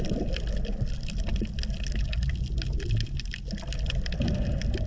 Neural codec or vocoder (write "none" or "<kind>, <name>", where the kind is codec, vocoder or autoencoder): none